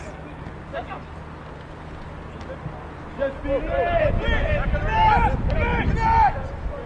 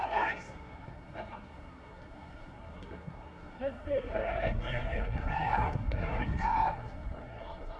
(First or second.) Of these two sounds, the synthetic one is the second